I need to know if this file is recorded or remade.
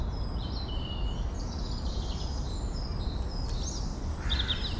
recorded